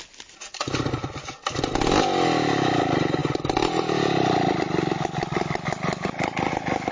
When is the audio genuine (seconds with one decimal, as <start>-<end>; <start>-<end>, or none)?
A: 0.0-6.9